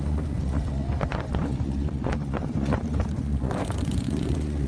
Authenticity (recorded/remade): remade